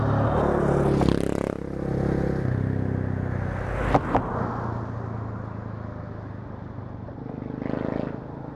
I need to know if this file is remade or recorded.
recorded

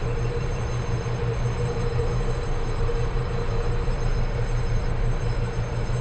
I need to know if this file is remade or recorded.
remade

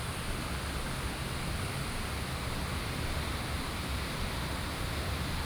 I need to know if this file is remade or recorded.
recorded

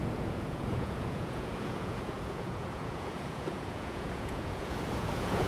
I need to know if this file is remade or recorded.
remade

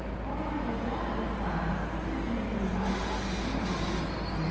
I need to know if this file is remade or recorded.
recorded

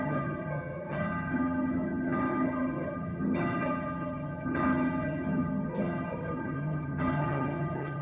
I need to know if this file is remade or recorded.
remade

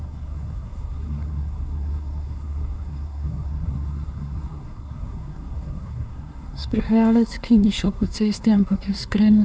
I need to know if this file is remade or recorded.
remade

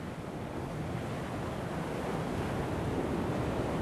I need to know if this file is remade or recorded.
recorded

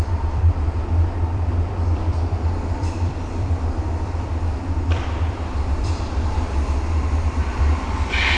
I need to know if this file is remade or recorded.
remade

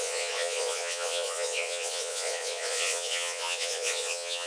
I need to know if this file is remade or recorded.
remade